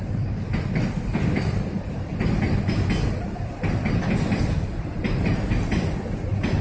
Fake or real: real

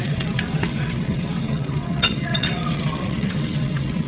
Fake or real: fake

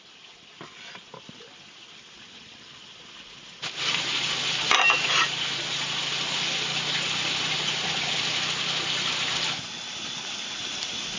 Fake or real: real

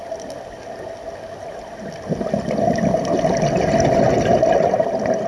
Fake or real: real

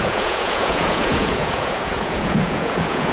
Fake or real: fake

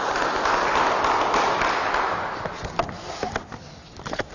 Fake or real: real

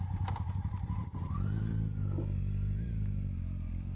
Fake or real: fake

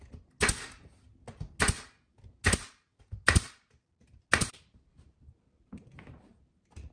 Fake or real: real